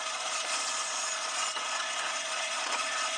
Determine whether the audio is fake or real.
fake